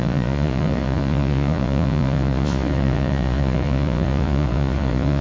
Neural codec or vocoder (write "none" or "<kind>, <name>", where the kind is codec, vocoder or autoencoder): vocoder, Vocos